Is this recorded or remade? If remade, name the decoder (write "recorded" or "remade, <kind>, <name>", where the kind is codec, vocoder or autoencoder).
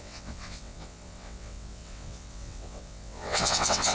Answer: remade, vocoder, WaveNeXt